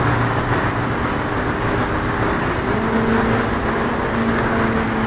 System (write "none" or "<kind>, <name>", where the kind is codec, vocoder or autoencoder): none